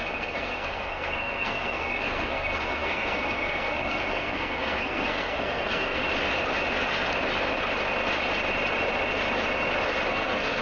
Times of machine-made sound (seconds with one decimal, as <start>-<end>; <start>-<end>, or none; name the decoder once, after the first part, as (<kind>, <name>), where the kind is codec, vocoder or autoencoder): 0.0-6.0 (codec, SNAC); 10.1-10.6

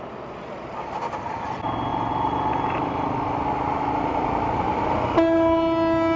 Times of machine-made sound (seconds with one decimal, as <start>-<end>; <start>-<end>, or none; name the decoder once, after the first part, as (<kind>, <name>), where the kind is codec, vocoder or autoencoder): none

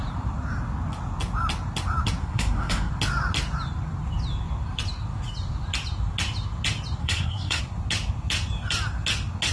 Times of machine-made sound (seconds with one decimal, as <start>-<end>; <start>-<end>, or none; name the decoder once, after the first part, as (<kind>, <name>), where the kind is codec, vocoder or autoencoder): 2.2-2.9 (codec, SNAC); 7.0-7.6